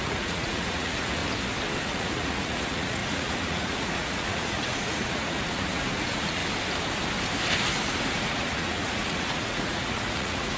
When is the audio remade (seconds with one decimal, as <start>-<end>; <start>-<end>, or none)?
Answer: 0.0-1.2; 1.8-6.4; 8.2-10.6